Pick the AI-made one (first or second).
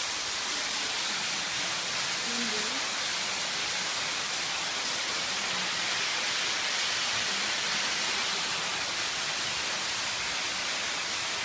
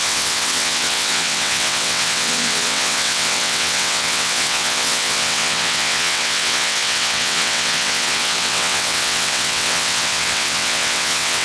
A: second